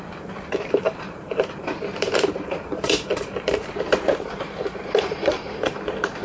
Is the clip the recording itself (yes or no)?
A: no